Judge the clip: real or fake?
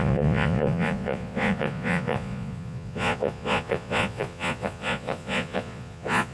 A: fake